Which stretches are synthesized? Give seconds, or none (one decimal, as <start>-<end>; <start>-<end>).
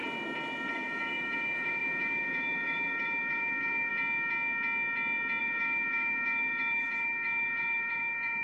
0.7-3.9; 5.4-8.4